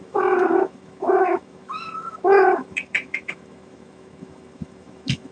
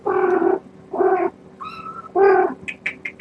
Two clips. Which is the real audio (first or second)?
second